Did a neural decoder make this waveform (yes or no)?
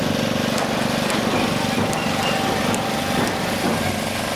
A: no